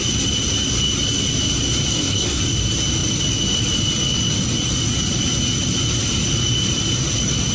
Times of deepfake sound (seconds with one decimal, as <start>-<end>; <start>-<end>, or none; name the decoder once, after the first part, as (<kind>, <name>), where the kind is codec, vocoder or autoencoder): 1.9-2.4 (codec, SNAC)